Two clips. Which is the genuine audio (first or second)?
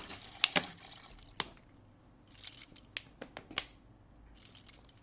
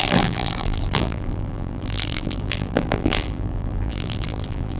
first